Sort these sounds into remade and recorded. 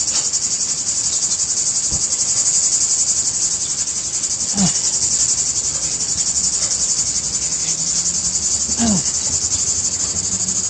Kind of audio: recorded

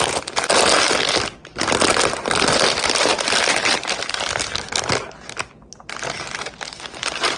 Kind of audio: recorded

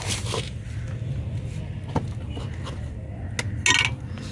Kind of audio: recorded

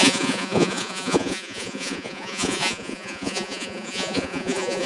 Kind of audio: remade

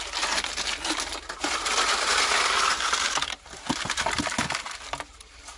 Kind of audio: recorded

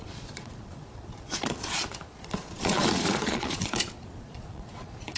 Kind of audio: remade